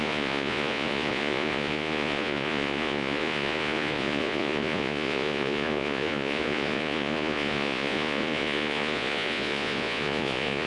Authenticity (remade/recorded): remade